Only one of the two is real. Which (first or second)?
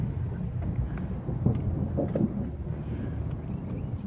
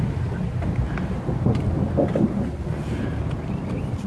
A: first